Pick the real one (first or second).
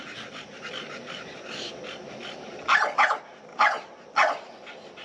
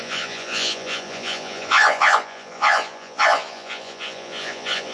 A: first